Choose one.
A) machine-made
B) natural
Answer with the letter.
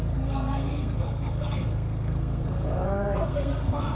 A